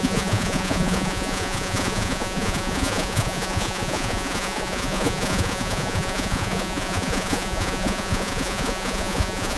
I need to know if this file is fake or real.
fake